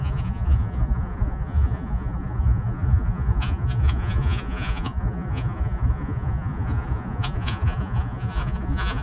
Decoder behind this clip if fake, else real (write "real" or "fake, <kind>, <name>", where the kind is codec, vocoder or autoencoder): fake, vocoder, Vocos